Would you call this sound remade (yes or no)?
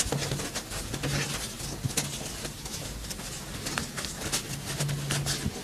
no